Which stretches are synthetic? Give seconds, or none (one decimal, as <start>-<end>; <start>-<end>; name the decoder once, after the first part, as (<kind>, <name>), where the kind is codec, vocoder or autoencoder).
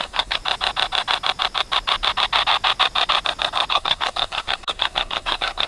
0.0-0.4 (codec, SNAC); 3.7-5.7